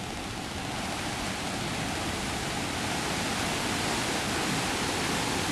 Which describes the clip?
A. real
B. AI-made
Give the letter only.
A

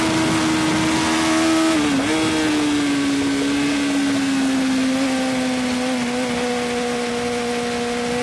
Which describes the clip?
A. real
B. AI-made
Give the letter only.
A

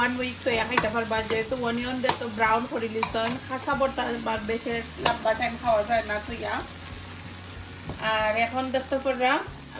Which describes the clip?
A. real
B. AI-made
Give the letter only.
A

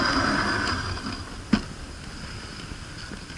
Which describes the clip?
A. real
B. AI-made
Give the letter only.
A